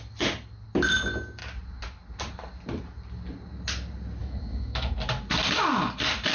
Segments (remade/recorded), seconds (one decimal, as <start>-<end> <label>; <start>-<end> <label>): 0.0-4.2 recorded; 4.2-4.9 remade; 4.9-6.3 recorded